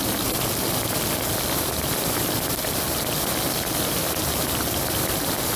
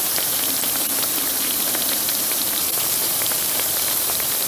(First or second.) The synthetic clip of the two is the second